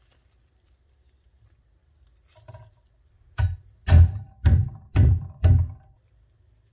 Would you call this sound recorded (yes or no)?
no